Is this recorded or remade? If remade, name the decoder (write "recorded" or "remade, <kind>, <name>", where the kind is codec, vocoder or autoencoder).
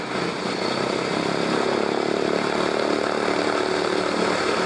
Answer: recorded